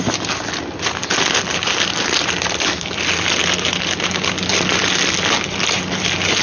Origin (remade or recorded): recorded